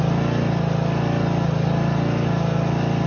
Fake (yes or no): no